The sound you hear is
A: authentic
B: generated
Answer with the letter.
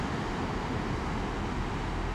A